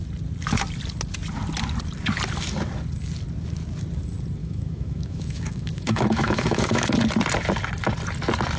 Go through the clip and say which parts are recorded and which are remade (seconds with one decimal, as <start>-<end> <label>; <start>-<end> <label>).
0.0-4.4 recorded; 4.4-7.0 remade; 7.0-8.6 recorded